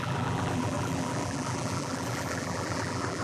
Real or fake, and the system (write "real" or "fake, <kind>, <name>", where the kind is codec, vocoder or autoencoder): fake, vocoder, BigVGAN v2